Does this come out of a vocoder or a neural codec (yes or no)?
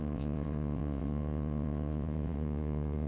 yes